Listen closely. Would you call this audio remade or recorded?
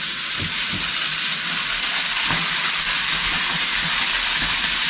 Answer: recorded